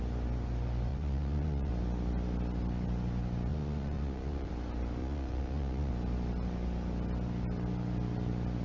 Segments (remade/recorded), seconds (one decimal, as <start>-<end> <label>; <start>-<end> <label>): 0.0-0.9 recorded; 0.9-1.7 remade; 1.7-3.5 recorded; 3.5-4.5 remade; 4.5-5.0 recorded; 5.0-5.9 remade; 5.9-8.6 recorded